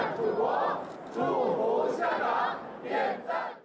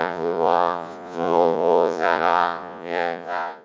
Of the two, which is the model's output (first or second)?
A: second